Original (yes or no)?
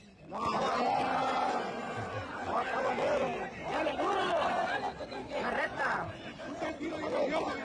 yes